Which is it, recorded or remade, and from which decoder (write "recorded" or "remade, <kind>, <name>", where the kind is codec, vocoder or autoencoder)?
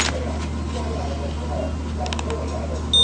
recorded